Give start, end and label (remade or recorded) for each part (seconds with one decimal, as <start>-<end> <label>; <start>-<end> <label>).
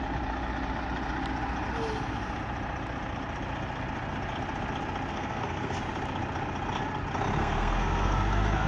0.0-5.1 recorded; 5.1-5.8 remade; 5.8-7.4 recorded; 7.4-8.7 remade